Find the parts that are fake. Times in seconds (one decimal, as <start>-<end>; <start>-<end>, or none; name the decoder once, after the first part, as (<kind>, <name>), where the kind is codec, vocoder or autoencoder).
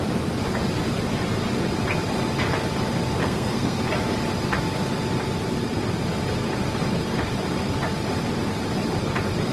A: 3.2-3.8 (codec, SNAC)